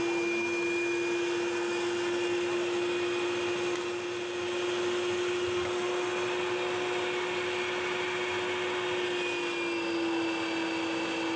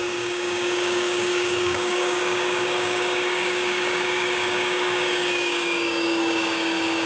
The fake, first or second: second